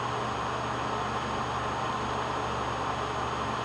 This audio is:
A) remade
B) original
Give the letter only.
B